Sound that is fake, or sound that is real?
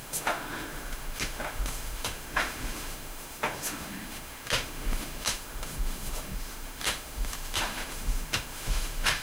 fake